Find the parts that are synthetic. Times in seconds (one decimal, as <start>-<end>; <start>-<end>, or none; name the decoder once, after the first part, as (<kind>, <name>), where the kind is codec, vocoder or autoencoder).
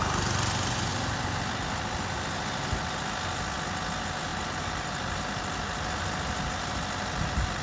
none